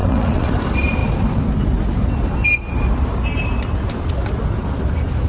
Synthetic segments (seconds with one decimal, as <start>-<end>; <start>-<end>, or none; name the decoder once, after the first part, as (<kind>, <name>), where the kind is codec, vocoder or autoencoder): 0.0-0.5 (vocoder, WaveNeXt)